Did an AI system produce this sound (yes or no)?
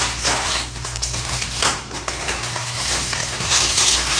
yes